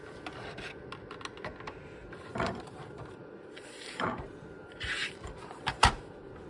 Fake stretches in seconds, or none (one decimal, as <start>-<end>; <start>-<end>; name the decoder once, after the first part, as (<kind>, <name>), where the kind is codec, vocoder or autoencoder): 2.0-5.9 (vocoder, BigVGAN v2)